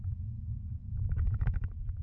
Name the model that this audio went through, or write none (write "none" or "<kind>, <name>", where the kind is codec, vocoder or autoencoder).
codec, DAC